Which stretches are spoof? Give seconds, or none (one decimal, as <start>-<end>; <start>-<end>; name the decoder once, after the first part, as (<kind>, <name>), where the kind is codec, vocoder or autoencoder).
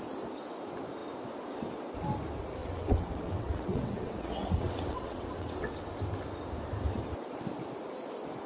2.6-5.8 (vocoder, WaveNeXt)